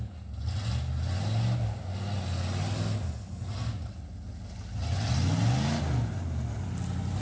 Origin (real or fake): real